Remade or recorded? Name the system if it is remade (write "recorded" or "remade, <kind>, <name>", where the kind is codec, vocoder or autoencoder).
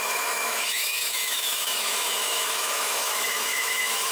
remade, autoencoder, DAC-VAE